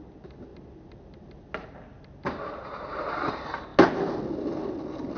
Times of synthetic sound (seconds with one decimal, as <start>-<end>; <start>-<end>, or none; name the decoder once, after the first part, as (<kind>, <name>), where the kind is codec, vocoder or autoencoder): none